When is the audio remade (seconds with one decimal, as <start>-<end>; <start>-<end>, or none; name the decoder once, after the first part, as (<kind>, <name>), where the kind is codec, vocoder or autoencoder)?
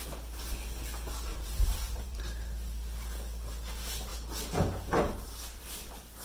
1.3-2.2 (vocoder, BigVGAN v2)